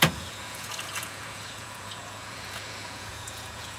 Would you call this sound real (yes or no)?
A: no